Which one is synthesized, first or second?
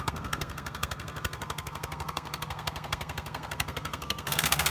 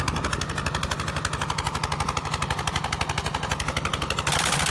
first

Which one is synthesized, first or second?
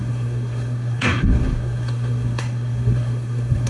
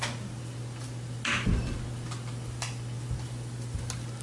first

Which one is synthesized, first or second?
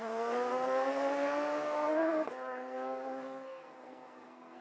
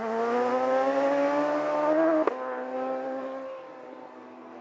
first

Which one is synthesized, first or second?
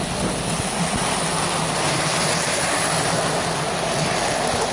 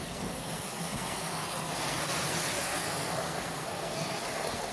second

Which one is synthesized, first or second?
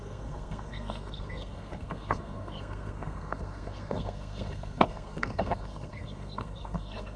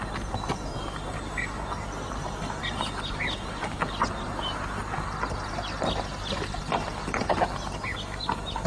first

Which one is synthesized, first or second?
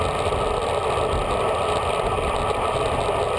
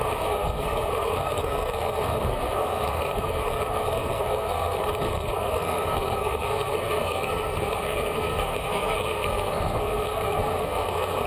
second